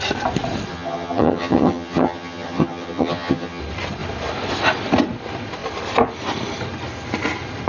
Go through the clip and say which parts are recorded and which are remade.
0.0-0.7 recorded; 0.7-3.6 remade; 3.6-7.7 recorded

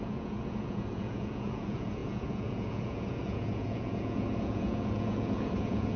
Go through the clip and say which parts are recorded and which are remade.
0.0-6.0 remade

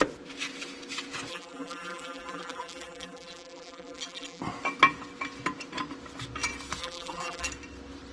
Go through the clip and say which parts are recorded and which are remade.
0.0-1.3 recorded; 1.3-4.4 remade; 4.4-6.8 recorded; 6.8-7.5 remade; 7.5-8.1 recorded